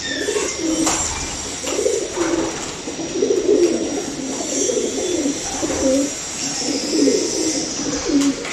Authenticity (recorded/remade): recorded